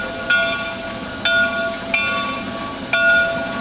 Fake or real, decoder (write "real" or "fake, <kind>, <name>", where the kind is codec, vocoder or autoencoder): real